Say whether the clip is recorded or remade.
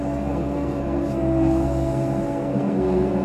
remade